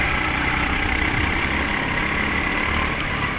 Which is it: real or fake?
real